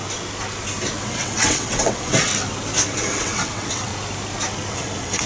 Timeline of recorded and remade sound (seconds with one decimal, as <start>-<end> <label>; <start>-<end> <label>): 0.0-1.0 recorded; 1.0-2.3 remade; 2.3-3.0 recorded; 3.0-3.9 remade; 3.9-4.7 recorded; 4.7-5.3 remade